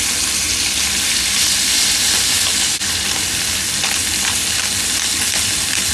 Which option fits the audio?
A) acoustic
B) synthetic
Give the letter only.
A